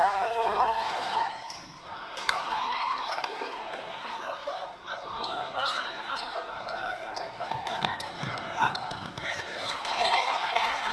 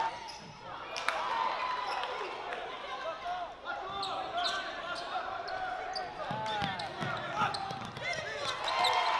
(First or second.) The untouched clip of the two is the second